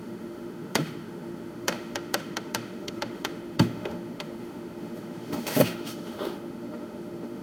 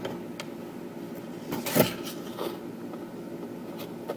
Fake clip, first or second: first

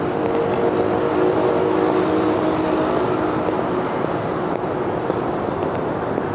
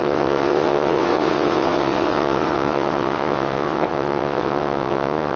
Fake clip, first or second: second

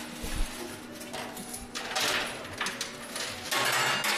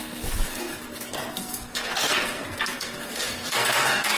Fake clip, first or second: second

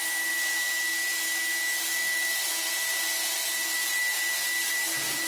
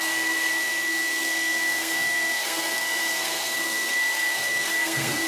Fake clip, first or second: second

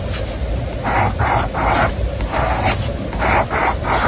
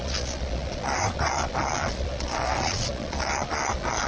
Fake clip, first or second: second